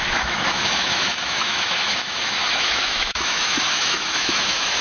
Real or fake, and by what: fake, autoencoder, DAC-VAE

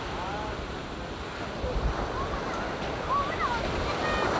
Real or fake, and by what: real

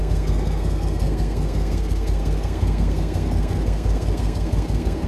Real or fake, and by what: fake, codec, SNAC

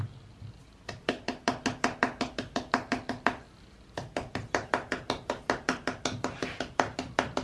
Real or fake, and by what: real